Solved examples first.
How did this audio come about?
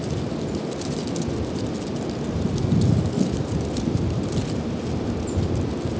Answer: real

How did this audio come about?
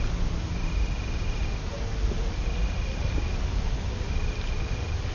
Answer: real